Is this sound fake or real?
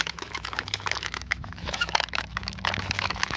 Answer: fake